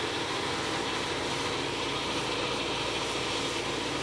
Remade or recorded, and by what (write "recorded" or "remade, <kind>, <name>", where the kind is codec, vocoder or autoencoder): recorded